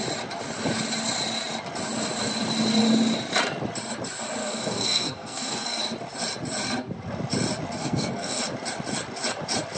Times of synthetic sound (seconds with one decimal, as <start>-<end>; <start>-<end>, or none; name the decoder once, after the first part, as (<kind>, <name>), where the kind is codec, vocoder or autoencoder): 4.4-5.8 (codec, SNAC); 7.8-8.4